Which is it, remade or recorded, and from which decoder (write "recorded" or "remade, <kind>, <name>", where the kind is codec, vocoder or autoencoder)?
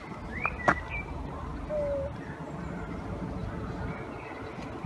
recorded